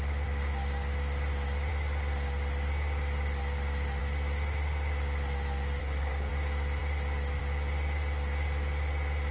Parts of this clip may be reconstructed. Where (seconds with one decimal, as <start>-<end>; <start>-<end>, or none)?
5.8-6.3